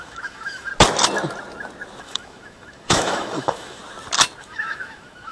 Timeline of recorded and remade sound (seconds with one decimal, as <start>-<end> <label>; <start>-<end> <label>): 0.0-0.7 remade; 0.7-2.0 recorded; 2.0-3.8 remade; 3.8-4.4 recorded; 4.4-5.3 remade